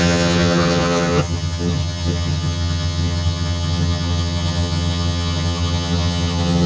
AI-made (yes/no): yes